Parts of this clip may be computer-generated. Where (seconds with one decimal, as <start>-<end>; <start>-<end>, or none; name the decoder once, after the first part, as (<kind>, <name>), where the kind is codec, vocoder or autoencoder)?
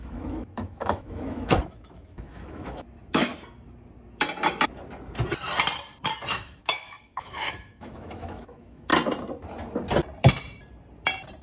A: 0.0-3.3 (autoencoder, DAC-VAE); 6.3-8.9